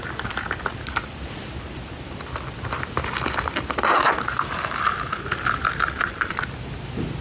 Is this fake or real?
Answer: real